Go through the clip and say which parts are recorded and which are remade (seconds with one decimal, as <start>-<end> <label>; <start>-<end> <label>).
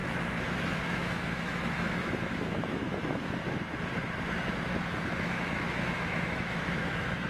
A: 0.0-3.4 remade; 3.4-5.1 recorded; 5.1-7.3 remade